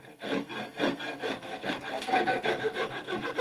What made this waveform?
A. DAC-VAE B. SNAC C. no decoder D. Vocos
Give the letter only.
B